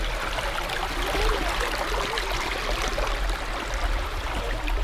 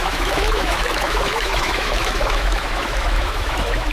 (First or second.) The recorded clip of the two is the first